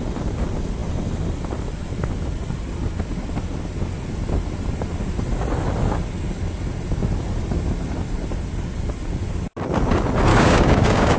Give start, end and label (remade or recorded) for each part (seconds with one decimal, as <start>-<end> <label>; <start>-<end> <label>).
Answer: 0.0-10.3 recorded; 10.3-11.2 remade